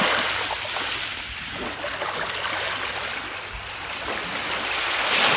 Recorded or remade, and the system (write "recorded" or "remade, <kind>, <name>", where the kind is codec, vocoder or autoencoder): recorded